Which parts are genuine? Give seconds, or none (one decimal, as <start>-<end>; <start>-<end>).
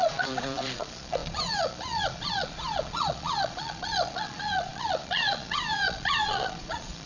none